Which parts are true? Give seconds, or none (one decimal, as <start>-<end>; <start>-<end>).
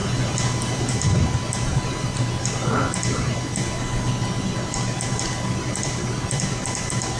0.0-7.2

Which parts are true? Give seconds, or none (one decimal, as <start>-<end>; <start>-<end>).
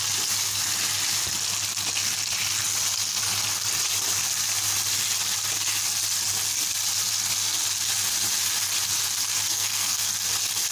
0.0-9.5; 10.1-10.7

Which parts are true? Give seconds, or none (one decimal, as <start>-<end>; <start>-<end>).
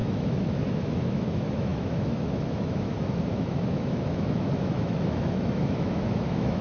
none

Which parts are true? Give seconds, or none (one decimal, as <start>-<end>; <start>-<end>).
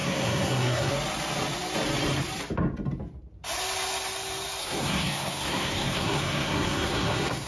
0.9-4.6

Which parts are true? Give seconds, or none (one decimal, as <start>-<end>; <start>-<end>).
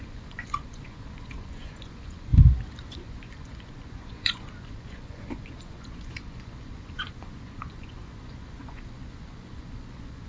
2.3-2.9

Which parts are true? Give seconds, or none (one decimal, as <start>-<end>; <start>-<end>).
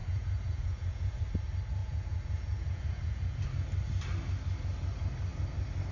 1.2-1.8; 3.4-5.9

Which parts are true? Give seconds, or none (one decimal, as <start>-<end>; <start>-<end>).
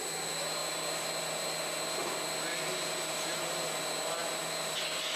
0.0-5.2